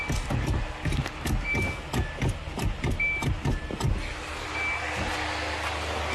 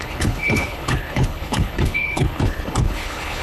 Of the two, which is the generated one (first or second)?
second